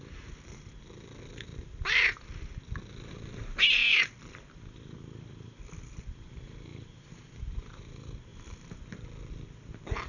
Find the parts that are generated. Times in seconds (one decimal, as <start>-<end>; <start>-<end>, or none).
6.7-7.8